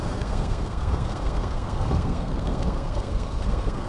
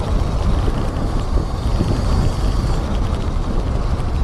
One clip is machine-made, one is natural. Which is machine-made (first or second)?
first